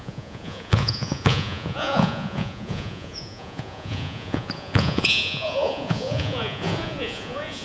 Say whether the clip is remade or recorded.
remade